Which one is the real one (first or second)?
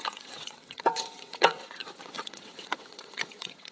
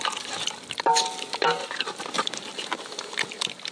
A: second